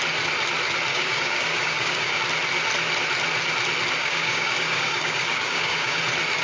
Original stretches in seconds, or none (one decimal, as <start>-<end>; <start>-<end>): 0.0-0.9; 2.2-4.0; 6.0-6.4